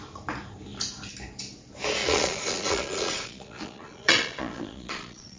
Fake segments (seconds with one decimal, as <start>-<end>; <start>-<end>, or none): 2.0-5.4